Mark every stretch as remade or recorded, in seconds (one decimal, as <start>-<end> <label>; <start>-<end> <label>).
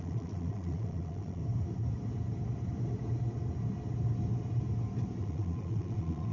0.0-1.4 remade; 1.4-5.2 recorded; 5.2-6.3 remade